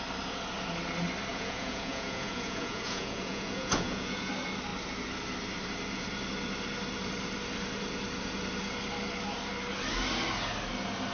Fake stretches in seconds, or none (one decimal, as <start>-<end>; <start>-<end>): 1.3-4.3